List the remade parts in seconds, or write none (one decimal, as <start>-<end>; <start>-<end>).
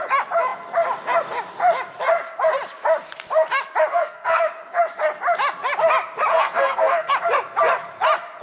3.9-4.5; 6.3-7.1